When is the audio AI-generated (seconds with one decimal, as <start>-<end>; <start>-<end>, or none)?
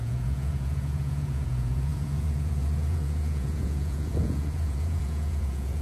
0.0-5.8